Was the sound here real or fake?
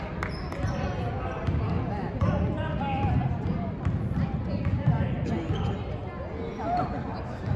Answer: real